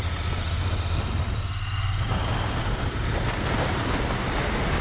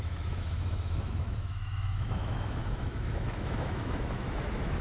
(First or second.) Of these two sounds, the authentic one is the first